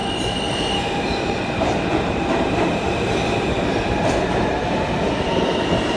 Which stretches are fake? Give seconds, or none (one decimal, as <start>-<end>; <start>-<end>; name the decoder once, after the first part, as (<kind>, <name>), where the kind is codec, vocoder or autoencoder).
0.0-3.6 (vocoder, BigVGAN v2)